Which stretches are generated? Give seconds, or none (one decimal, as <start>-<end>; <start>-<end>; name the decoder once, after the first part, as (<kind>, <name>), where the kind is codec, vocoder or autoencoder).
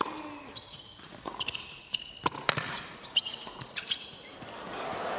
0.7-2.1 (vocoder, Vocos); 2.8-4.1